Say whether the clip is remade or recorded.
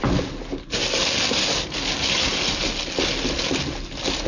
recorded